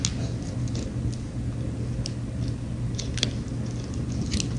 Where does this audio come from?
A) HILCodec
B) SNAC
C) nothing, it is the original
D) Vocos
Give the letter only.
C